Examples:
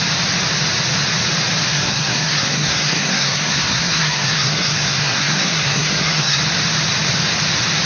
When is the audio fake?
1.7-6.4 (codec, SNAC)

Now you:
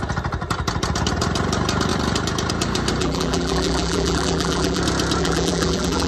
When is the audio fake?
3.0-4.8 (vocoder, BigVGAN v2); 5.2-6.1

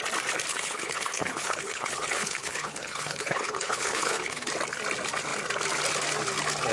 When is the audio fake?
0.5-4.5 (codec, HILCodec)